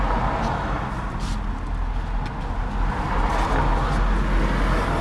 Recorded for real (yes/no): yes